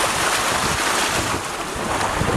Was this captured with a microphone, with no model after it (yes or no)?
yes